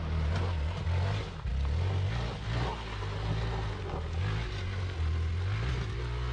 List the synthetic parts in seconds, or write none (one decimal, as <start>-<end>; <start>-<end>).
none